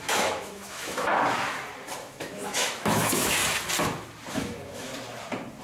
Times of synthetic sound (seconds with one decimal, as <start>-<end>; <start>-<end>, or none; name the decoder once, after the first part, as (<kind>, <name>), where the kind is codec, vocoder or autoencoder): 0.0-1.1 (autoencoder, DAC-VAE); 2.0-3.4; 4.3-4.9